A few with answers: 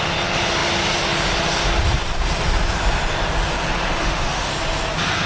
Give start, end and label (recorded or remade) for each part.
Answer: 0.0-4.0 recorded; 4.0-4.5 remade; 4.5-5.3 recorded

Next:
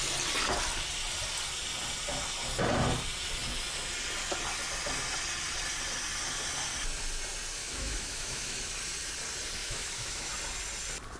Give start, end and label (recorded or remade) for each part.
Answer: 0.0-7.6 recorded; 7.6-8.6 remade; 8.6-9.6 recorded; 9.6-10.3 remade; 10.3-11.2 recorded

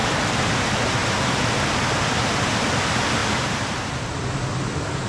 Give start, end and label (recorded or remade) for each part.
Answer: 0.0-5.1 recorded

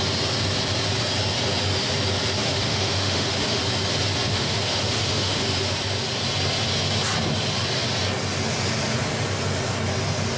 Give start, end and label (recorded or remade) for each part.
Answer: 0.0-2.4 recorded; 2.4-3.6 remade; 3.6-4.3 recorded; 4.3-5.5 remade; 5.5-10.4 recorded

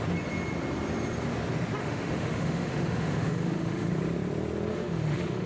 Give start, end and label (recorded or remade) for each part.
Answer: 0.0-1.8 recorded; 1.8-3.9 remade; 3.9-4.7 recorded; 4.7-5.5 remade

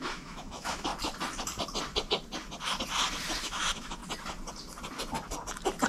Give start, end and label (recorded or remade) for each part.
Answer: 0.0-0.9 remade; 0.9-3.4 recorded; 3.4-4.0 remade; 4.0-5.9 recorded